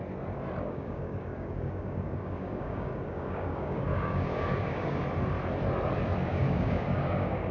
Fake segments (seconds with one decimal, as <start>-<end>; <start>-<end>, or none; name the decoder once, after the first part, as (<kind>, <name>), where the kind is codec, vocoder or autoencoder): 0.6-5.0 (codec, DAC); 6.3-7.5